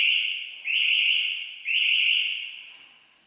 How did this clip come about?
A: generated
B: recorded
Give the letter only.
B